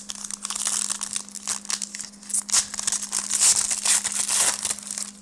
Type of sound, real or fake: real